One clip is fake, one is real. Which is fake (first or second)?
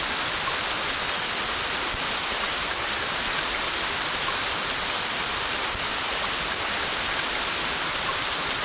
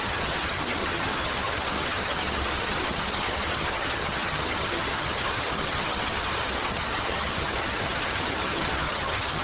second